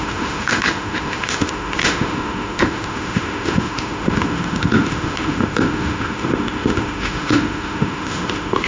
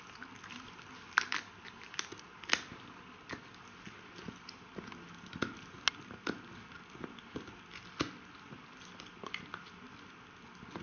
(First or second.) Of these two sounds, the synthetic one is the first